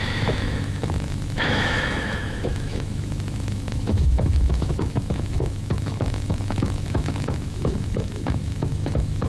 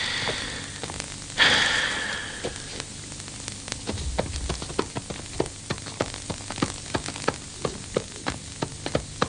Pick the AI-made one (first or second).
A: first